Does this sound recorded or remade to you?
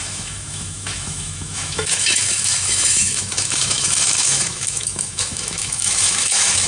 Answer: remade